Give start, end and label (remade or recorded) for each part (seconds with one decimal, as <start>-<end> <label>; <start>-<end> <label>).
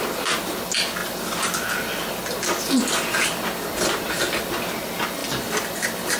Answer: 0.0-5.2 recorded; 5.2-6.2 remade